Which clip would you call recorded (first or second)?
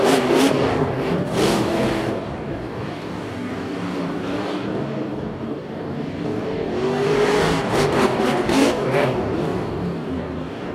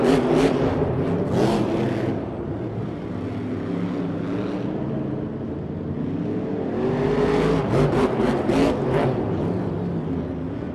second